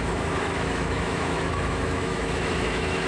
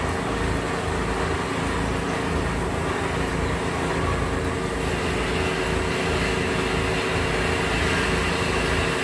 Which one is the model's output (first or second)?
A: first